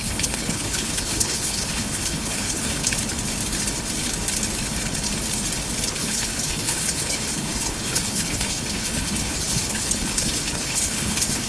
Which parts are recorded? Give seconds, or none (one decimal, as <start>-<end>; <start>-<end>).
2.8-5.9